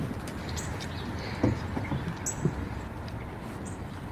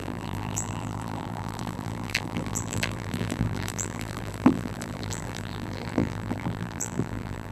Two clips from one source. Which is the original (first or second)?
first